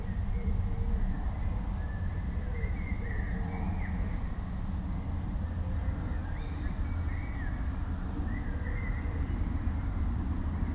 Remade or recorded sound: recorded